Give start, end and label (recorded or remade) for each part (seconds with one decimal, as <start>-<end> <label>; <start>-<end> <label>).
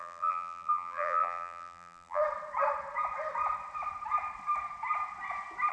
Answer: 0.0-2.2 remade; 2.2-5.7 recorded